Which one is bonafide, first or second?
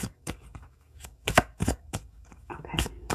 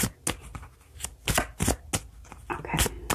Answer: second